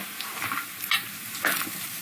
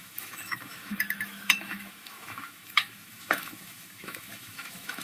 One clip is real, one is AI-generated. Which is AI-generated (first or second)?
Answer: second